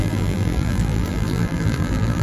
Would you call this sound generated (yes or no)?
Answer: yes